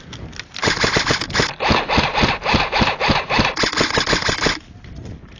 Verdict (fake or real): real